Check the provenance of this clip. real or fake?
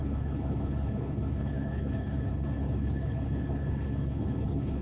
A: fake